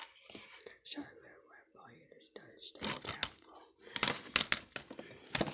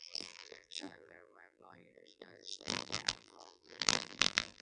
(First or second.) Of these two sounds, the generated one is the second